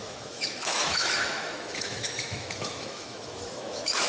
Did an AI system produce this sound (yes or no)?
yes